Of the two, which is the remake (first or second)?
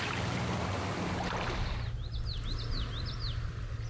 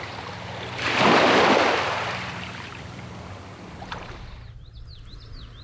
second